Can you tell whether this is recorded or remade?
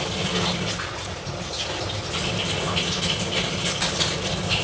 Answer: recorded